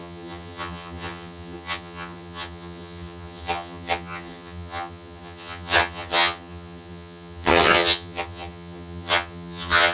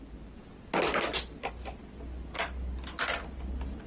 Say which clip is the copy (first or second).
first